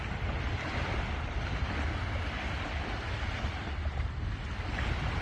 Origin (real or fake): real